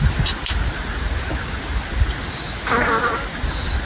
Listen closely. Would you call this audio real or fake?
real